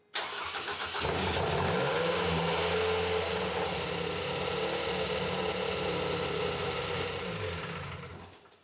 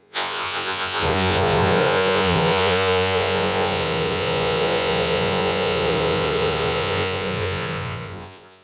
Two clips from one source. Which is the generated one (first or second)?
second